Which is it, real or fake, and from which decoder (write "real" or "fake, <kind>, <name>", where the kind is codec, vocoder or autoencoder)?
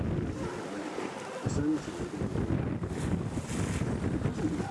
real